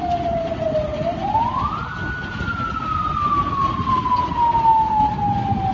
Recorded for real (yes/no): yes